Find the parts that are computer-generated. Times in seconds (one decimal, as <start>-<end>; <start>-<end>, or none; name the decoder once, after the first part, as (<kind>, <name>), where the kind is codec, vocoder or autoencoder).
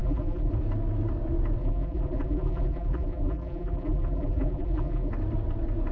0.0-0.5 (vocoder, BigVGAN v2); 1.6-5.1